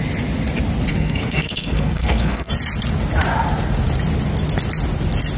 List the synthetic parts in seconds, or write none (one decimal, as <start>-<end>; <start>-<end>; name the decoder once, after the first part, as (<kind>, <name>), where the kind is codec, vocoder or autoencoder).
0.9-2.5 (codec, SNAC)